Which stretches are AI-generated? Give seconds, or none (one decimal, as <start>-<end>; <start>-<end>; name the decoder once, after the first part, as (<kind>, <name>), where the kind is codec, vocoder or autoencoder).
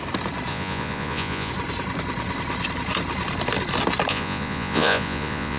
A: 0.5-1.5 (vocoder, Vocos); 4.1-5.6